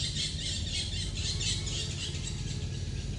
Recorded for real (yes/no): yes